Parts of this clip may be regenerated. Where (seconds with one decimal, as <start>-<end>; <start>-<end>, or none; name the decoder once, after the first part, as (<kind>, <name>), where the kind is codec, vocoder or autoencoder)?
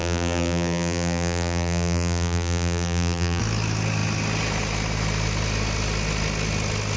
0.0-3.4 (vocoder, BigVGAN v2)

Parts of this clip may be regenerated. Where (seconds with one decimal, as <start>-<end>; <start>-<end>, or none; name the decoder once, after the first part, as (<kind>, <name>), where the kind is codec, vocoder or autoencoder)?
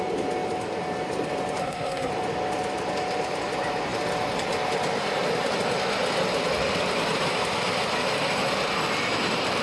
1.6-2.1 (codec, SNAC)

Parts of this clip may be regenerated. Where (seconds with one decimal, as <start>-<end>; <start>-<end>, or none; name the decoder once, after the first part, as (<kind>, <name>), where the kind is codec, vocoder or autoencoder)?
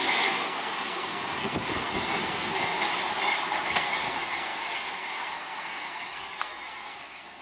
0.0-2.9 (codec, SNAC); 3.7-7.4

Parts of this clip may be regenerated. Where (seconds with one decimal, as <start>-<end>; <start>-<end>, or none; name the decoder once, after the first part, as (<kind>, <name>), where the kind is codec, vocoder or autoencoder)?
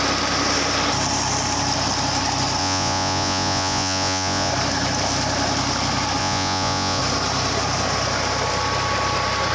2.6-4.5 (vocoder, Vocos); 6.2-7.0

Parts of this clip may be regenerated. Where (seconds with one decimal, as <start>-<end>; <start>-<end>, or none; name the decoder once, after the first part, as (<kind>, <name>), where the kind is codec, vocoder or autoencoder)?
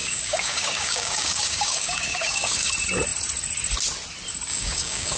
0.0-2.7 (codec, DAC); 4.5-5.2